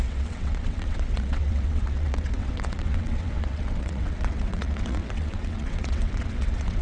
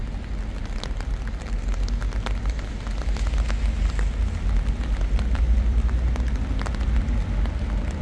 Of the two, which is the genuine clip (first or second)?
second